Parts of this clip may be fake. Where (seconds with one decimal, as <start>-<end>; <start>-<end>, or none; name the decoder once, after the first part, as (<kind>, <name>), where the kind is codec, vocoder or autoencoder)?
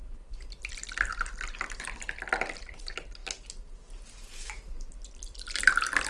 0.0-3.2 (vocoder, BigVGAN v2); 4.9-6.1